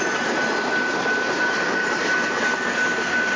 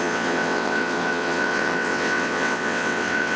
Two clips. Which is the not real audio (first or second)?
second